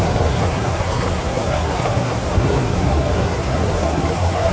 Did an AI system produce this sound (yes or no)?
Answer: yes